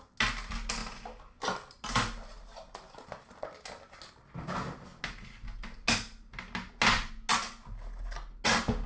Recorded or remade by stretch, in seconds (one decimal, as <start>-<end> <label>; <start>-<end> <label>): 0.0-8.9 recorded